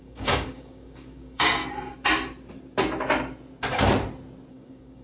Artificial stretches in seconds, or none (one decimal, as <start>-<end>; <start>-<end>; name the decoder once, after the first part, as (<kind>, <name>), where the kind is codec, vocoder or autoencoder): 0.0-1.6 (codec, DAC); 4.5-5.0